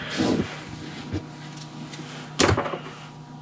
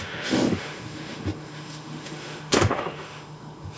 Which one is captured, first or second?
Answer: first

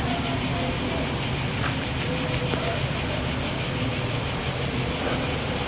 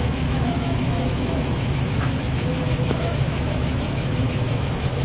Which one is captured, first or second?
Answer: first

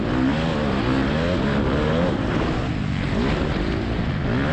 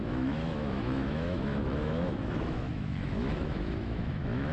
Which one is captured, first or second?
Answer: first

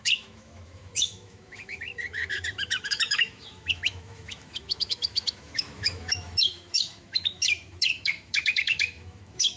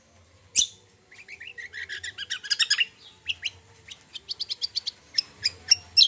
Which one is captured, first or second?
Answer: second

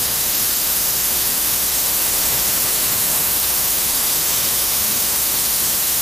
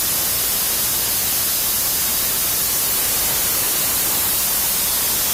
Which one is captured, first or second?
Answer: second